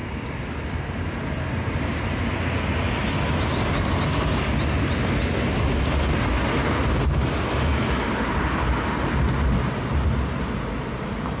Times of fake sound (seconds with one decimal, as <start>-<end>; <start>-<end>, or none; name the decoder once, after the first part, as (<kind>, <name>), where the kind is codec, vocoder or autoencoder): none